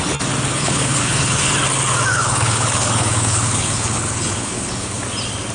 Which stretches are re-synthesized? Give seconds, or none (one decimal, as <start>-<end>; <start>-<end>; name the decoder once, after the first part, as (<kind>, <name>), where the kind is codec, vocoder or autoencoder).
0.5-1.5 (codec, HILCodec); 2.1-5.0